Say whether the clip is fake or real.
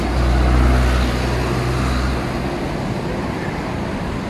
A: real